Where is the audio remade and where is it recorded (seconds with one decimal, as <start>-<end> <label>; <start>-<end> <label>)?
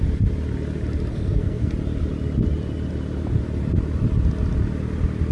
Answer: 0.0-1.1 recorded; 1.1-1.7 remade; 1.7-5.3 recorded